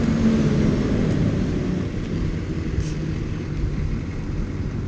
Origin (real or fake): real